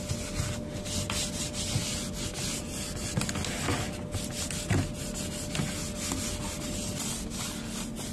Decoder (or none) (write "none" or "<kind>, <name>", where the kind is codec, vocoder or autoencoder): none